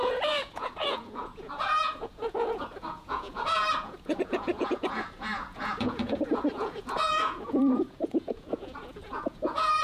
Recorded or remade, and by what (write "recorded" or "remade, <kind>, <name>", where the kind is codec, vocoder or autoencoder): remade, vocoder, Vocos